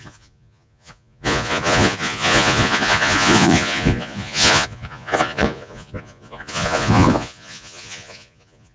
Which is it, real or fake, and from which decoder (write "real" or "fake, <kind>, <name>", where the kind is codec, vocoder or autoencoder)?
fake, vocoder, Vocos